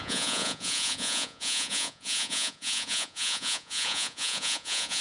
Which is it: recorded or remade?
remade